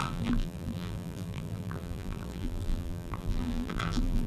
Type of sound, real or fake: fake